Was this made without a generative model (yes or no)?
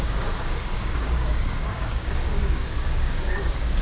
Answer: no